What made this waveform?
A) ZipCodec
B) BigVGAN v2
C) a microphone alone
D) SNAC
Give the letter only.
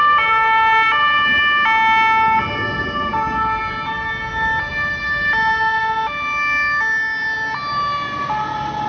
C